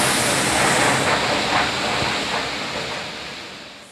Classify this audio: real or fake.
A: real